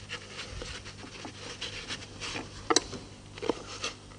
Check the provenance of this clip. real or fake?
real